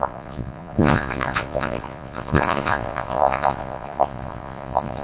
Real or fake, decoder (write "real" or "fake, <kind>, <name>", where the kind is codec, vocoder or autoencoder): fake, vocoder, Vocos